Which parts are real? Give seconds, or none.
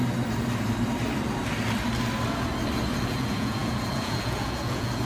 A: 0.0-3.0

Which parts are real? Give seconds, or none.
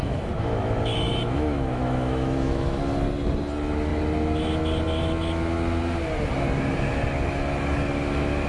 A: 2.8-8.5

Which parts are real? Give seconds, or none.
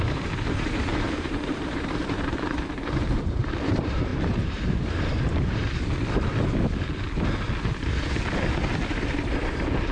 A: 5.6-8.9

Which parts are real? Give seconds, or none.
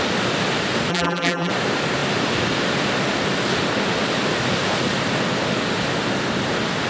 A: 0.0-0.9; 1.5-6.9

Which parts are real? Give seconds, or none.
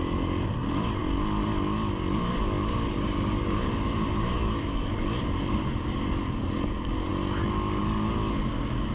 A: 0.0-8.9